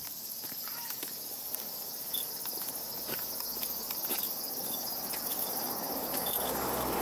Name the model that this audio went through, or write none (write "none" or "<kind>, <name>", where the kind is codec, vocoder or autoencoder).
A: codec, DAC